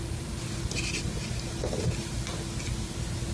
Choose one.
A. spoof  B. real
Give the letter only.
B